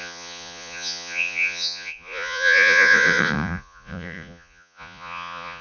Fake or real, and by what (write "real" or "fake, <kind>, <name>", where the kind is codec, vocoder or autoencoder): fake, vocoder, Vocos